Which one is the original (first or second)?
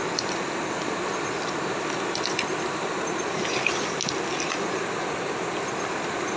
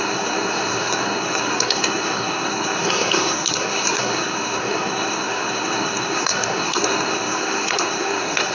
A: first